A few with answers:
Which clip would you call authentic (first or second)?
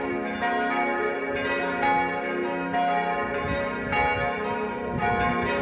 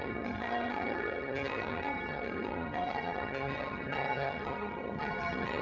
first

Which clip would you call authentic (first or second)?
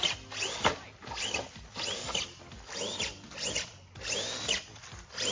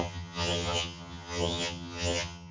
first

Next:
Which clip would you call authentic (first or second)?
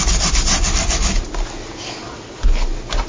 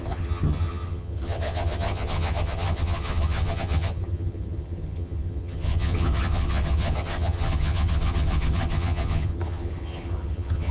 first